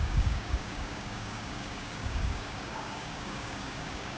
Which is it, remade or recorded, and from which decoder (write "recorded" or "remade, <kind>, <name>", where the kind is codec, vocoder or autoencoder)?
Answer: remade, codec, DAC